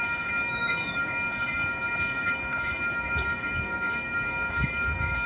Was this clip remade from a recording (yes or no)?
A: yes